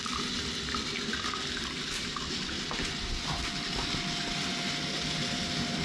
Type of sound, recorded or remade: recorded